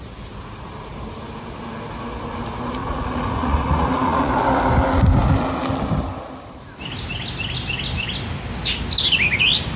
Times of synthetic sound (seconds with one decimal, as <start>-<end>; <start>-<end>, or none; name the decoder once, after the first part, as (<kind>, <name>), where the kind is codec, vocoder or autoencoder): 2.8-4.3 (vocoder, Vocos)